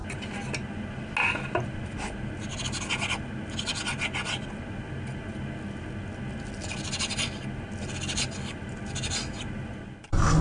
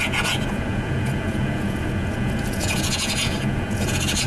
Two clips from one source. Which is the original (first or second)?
first